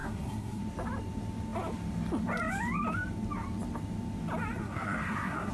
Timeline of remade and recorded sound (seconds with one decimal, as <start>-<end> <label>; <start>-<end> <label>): 0.0-0.6 remade; 0.6-4.6 recorded; 4.6-5.5 remade